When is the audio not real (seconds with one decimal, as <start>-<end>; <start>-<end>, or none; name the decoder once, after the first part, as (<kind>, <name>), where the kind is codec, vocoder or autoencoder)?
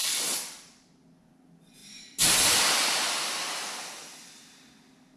0.0-0.9 (vocoder, BigVGAN v2); 1.8-3.3